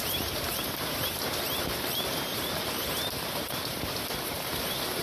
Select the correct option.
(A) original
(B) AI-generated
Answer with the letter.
B